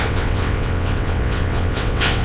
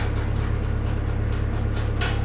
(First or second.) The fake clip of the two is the first